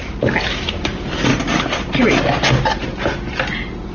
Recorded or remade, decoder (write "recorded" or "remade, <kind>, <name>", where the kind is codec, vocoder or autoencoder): recorded